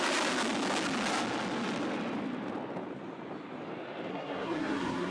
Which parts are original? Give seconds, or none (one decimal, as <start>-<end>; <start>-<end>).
0.0-4.1